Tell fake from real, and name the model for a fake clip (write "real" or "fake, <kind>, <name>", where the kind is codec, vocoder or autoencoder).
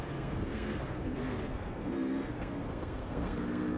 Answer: fake, codec, SNAC